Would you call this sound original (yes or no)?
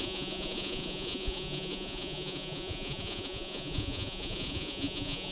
no